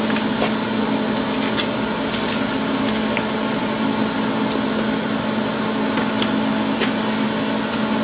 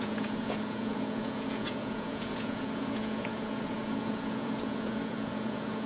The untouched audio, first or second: first